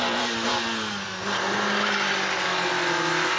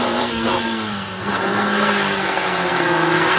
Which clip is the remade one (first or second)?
second